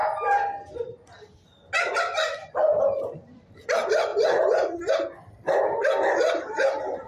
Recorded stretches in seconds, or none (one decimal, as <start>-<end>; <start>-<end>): 0.0-2.0; 4.1-4.9